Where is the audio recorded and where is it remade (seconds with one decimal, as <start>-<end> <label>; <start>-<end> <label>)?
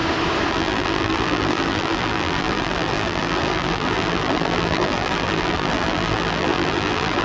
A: 0.0-0.5 recorded; 0.5-7.2 remade